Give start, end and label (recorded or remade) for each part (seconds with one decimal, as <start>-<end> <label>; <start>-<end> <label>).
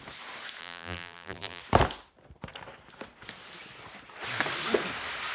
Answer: 0.0-0.6 recorded; 0.6-1.6 remade; 1.6-5.3 recorded